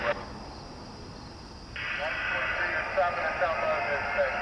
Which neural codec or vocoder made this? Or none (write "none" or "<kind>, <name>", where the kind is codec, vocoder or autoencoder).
none